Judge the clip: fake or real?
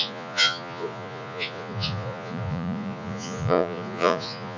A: fake